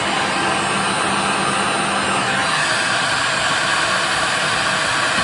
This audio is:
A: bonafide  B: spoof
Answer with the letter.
A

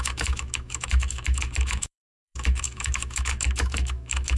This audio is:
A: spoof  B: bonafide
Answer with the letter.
A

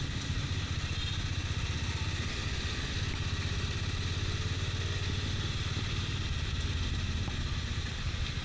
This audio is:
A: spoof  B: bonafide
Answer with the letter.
B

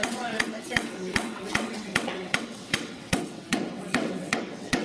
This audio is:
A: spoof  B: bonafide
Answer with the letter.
A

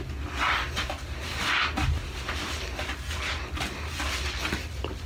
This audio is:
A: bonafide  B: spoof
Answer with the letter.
A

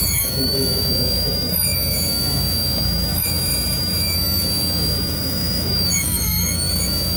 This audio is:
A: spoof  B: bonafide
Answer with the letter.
A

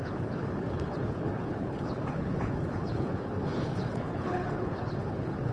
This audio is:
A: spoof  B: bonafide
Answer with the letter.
A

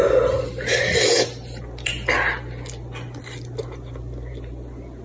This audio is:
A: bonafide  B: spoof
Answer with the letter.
A